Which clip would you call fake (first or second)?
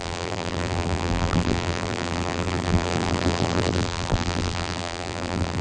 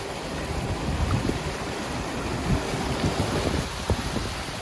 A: first